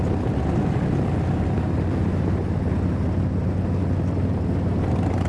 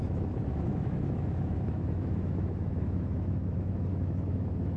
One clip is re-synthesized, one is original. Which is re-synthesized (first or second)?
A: second